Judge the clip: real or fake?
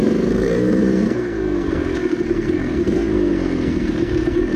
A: fake